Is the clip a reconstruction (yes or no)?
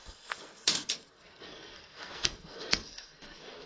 yes